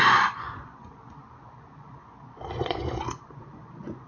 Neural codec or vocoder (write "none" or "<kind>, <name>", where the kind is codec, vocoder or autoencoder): vocoder, Vocos